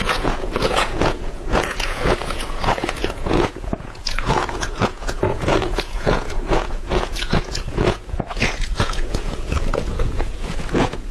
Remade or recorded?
remade